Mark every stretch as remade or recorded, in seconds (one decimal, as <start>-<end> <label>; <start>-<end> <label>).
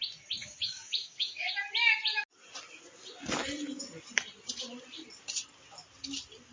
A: 0.0-0.4 recorded; 0.4-1.5 remade; 1.5-6.5 recorded